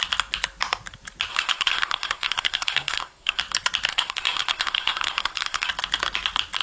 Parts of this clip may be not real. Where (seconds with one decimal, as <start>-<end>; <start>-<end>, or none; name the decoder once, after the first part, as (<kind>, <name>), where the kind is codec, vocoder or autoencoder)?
1.3-3.4 (codec, SNAC); 3.9-5.7